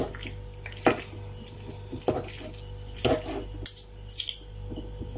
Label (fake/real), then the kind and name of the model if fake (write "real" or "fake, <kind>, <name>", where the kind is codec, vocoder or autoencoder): real